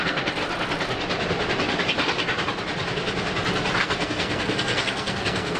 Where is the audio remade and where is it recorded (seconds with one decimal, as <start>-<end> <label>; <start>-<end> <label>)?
0.0-0.4 remade; 0.4-3.8 recorded; 3.8-5.6 remade